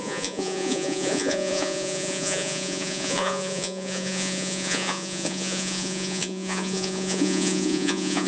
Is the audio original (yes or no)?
no